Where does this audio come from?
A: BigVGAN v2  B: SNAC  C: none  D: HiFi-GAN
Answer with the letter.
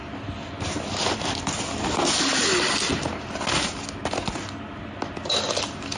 C